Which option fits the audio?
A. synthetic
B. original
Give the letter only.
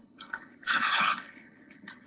A